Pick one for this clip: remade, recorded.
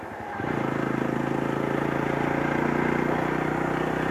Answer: recorded